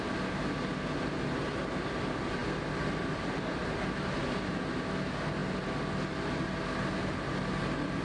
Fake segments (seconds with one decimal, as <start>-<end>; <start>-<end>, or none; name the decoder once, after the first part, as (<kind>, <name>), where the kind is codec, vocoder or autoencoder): none